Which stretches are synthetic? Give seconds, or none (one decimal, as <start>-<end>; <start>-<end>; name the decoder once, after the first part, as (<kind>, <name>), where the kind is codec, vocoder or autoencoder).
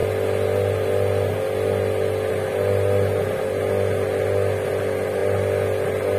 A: none